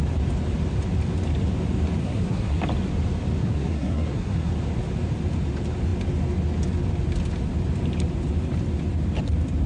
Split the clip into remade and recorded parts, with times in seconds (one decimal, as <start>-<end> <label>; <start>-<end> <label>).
0.0-2.0 recorded; 2.0-2.6 remade; 2.6-3.4 recorded; 3.4-4.5 remade; 4.5-9.7 recorded